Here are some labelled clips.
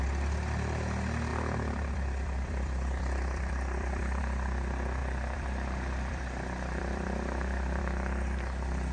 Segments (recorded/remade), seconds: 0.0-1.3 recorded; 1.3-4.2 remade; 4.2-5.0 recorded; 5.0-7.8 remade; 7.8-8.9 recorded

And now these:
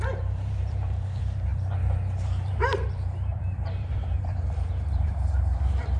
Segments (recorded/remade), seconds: 0.0-6.0 remade